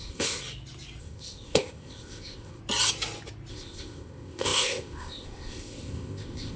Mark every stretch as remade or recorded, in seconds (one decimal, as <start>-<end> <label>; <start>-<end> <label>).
0.0-0.4 remade; 0.4-1.0 recorded; 1.0-2.6 remade; 2.6-3.5 recorded; 3.5-6.6 remade